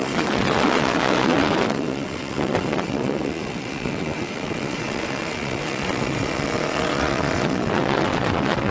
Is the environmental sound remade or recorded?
remade